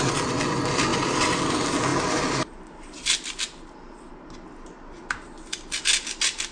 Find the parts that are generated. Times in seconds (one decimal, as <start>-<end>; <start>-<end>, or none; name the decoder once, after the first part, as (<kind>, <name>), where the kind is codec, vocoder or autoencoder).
none